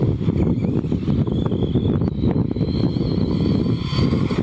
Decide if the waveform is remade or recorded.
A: recorded